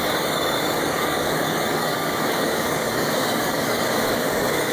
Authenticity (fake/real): fake